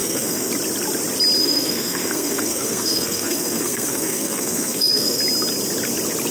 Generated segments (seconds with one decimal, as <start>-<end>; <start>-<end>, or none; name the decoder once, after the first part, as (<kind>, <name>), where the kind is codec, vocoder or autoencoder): 0.0-0.5 (codec, SNAC); 1.4-5.2